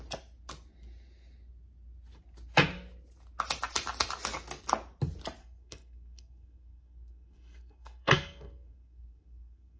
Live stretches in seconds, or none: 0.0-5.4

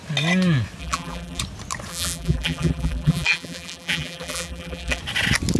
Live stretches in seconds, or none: 0.0-0.8; 1.4-1.9; 5.0-5.6

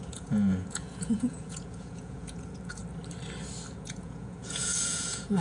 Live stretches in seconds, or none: 2.8-3.7

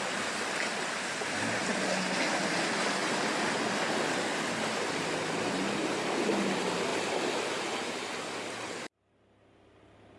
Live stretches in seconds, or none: 0.0-10.2